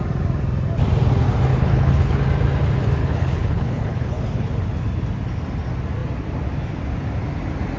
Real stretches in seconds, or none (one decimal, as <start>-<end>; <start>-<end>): 0.0-1.5; 2.2-3.0; 4.5-7.8